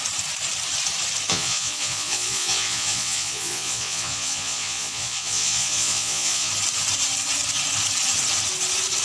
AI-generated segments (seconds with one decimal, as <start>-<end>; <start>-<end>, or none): 1.3-6.5